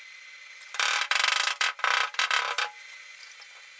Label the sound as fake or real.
fake